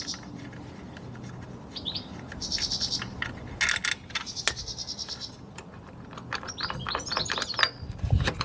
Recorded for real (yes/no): yes